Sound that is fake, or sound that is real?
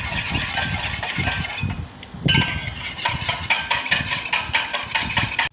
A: real